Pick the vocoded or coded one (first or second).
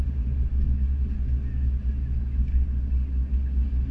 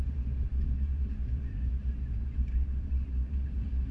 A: second